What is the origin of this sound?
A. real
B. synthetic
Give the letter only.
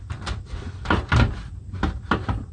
A